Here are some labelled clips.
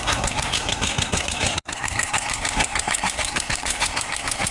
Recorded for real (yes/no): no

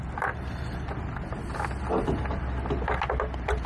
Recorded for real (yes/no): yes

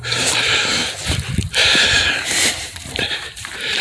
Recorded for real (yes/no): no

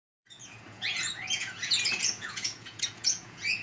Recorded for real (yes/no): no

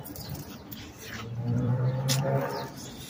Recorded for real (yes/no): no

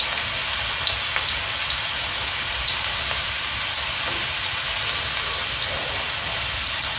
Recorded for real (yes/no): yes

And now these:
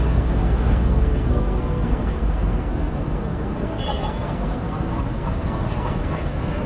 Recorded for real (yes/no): no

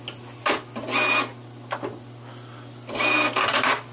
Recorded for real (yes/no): yes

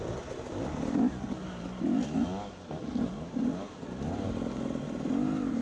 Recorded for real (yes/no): yes